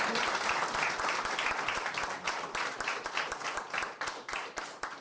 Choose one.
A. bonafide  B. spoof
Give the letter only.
A